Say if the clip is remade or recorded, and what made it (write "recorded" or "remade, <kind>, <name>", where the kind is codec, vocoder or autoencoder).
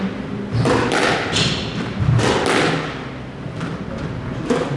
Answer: recorded